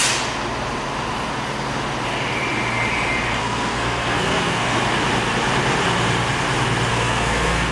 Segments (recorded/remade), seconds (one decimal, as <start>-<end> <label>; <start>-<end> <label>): 0.0-3.4 recorded; 3.4-4.8 remade; 4.8-6.9 recorded; 6.9-7.7 remade